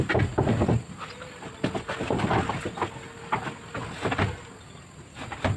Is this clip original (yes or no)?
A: yes